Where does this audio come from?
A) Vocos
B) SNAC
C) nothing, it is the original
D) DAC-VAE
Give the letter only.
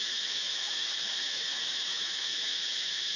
D